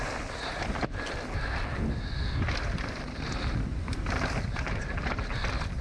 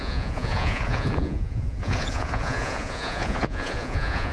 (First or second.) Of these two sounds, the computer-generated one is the second